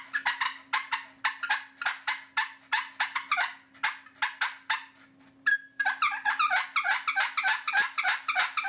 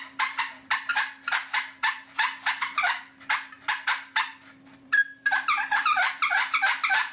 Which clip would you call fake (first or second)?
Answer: second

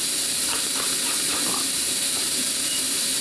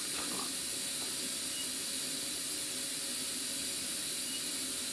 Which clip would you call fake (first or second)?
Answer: first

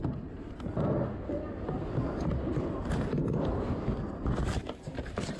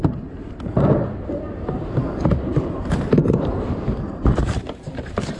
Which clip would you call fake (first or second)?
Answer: second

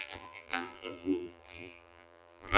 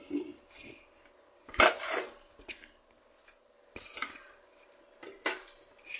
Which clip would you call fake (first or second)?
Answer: first